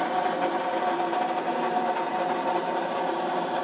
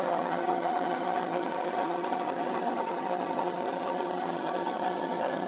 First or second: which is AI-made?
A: second